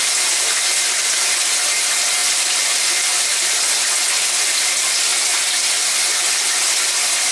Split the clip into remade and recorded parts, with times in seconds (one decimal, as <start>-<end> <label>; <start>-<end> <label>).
0.0-7.3 recorded